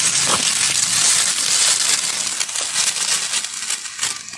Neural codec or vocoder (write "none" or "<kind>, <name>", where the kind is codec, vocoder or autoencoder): none